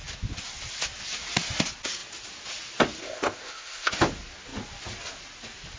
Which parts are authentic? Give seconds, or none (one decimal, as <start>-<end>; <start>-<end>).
0.0-3.0; 3.9-5.8